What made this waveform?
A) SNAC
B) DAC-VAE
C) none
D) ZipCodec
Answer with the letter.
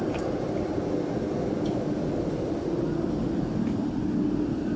C